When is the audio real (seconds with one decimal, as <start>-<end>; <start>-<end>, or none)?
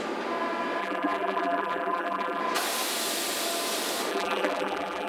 0.0-0.8; 2.4-4.1